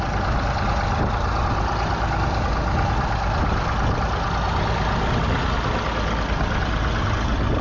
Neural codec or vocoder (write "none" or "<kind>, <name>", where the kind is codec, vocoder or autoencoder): none